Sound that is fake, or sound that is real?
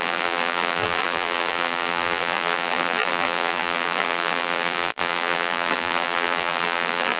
fake